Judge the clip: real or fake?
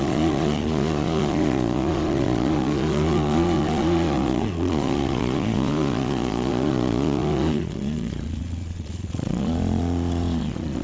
fake